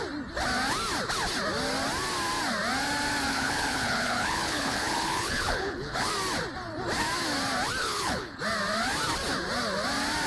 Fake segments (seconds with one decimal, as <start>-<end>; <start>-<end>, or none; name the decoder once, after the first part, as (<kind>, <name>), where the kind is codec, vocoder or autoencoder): 3.3-6.1 (codec, HILCodec); 7.8-8.4

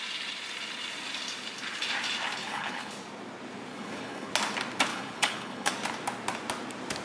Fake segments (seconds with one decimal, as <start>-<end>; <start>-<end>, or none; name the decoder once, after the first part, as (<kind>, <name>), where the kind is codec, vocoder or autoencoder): 2.4-2.9 (codec, HILCodec); 3.7-4.3; 4.9-5.7

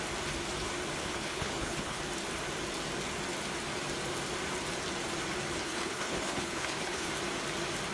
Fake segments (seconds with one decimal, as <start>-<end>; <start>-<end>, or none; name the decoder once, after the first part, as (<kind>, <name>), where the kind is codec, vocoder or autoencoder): 1.0-2.0 (codec, HILCodec); 5.6-7.1

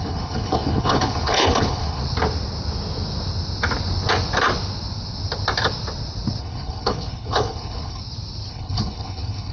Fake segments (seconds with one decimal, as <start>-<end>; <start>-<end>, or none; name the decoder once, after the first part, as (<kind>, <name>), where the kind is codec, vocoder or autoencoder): 0.0-2.0 (codec, HILCodec); 6.4-8.0; 8.5-9.5

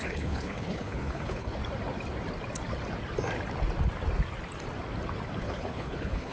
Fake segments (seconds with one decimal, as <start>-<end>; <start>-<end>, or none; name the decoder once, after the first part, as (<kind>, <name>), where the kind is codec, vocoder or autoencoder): 0.0-1.6 (codec, HILCodec); 5.4-6.3

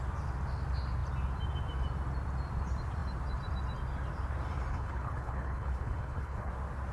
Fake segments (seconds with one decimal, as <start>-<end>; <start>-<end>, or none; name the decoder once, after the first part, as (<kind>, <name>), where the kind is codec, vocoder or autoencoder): 4.7-6.5 (codec, HILCodec)